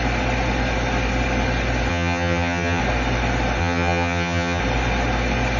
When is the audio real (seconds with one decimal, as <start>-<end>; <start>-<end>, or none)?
0.0-1.9; 2.8-3.6; 4.6-5.6